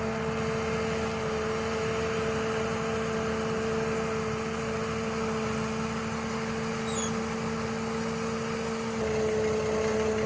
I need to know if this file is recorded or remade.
recorded